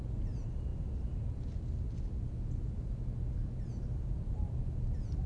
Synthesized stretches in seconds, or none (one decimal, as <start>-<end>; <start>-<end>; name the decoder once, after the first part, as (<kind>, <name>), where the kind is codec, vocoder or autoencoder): none